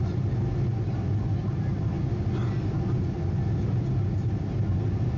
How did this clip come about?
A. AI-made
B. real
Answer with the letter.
B